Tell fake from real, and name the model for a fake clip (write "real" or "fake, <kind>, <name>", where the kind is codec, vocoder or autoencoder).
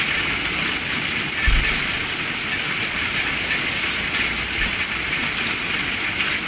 real